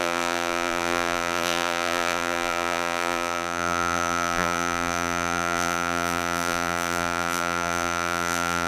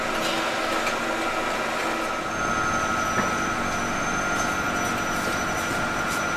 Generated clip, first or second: first